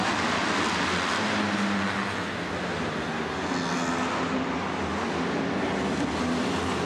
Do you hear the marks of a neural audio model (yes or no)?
no